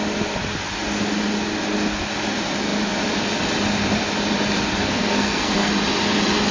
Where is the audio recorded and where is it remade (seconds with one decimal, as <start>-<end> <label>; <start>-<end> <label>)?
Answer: 0.0-4.8 recorded; 4.8-5.7 remade; 5.7-6.5 recorded